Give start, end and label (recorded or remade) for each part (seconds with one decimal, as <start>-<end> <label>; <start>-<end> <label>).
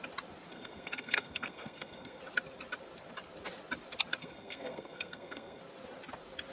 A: 0.0-0.5 recorded; 0.5-2.2 remade; 2.2-4.2 recorded; 4.2-5.6 remade; 5.6-6.5 recorded